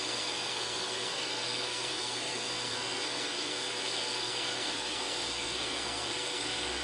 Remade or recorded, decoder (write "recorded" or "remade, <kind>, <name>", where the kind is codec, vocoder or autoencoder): remade, codec, SNAC